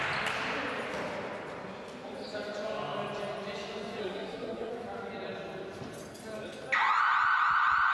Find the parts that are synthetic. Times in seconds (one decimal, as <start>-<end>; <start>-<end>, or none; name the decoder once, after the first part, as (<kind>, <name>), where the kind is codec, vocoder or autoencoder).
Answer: 4.0-4.7 (codec, SNAC)